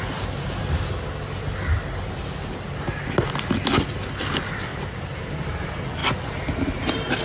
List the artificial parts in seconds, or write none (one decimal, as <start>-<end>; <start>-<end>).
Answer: none